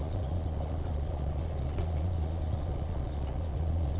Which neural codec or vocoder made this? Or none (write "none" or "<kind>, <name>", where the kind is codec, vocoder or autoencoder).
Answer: vocoder, Vocos